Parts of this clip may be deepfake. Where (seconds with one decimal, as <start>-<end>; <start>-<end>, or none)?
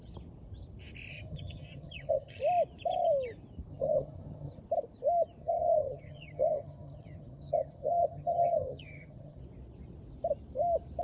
1.1-2.4; 3.7-4.6; 5.4-9.4